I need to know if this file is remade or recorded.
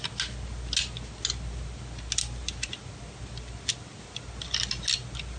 recorded